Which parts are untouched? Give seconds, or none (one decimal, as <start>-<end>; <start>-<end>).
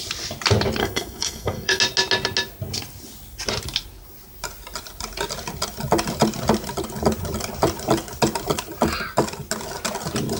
0.0-0.8; 1.8-10.4